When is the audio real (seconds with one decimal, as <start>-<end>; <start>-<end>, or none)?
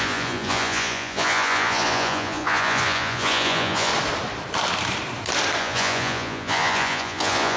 3.9-5.6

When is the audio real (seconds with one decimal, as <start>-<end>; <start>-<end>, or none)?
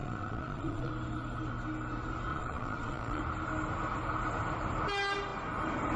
0.9-2.3; 3.2-6.0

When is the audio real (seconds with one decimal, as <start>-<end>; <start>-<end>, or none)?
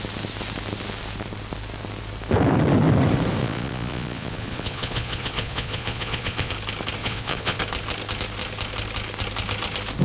0.0-3.4; 6.5-7.0; 7.6-10.0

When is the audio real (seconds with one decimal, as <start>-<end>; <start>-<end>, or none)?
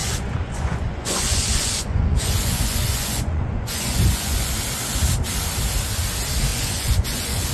4.5-6.5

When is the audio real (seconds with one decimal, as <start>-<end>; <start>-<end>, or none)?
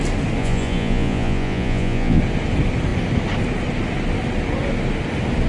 0.0-0.4; 2.2-5.5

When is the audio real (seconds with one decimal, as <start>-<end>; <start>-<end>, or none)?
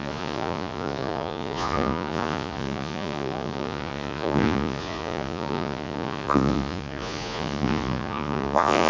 none